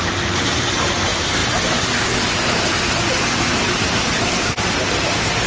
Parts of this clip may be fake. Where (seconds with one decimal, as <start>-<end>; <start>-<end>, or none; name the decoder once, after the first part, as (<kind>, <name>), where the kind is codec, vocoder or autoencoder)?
none